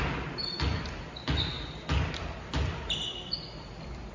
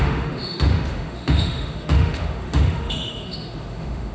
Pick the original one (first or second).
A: first